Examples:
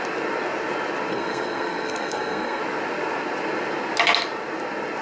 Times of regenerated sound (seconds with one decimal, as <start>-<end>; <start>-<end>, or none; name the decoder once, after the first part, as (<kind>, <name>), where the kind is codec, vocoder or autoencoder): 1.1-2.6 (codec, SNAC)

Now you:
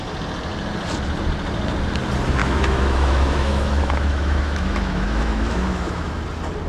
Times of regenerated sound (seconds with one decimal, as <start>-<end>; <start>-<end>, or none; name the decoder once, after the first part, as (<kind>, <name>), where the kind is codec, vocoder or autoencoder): 2.4-6.1 (autoencoder, DAC-VAE)

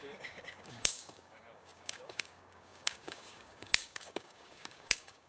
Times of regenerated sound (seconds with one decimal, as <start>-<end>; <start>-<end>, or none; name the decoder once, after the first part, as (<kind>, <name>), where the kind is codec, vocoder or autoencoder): 0.0-5.3 (codec, DAC)

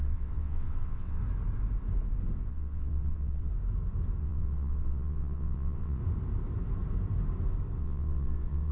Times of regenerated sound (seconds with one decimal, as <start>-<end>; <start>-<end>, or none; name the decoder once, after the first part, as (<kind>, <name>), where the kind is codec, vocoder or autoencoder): 0.0-1.2 (vocoder, WaveNeXt); 2.5-3.5; 4.2-6.0; 7.8-8.7

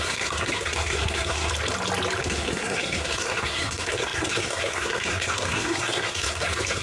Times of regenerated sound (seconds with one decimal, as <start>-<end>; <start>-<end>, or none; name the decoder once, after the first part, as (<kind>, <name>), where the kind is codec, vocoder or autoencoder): 0.0-1.5 (codec, SNAC); 2.2-6.8

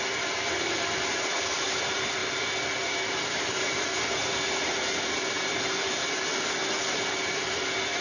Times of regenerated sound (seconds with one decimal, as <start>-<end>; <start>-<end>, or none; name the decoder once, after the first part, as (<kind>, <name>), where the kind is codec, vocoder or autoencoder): 0.0-6.8 (vocoder, BigVGAN v2); 7.3-8.0

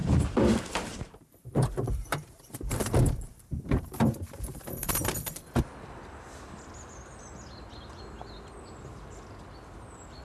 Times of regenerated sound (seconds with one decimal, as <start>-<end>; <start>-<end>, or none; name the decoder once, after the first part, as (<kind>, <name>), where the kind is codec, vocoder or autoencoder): 0.0-5.1 (vocoder, BigVGAN v2)

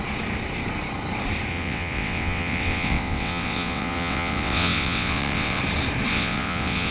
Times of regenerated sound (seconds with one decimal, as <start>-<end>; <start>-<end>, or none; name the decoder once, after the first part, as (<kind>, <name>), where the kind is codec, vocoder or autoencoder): 1.5-5.6 (vocoder, WaveNeXt); 6.1-6.9